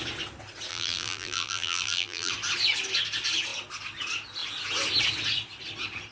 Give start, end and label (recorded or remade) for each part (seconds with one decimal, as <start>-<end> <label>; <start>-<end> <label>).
0.0-0.7 recorded; 0.7-2.3 remade; 2.3-6.1 recorded